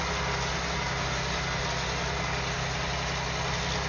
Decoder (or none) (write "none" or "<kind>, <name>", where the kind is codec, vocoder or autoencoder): none